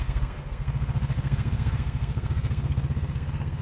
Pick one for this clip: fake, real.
fake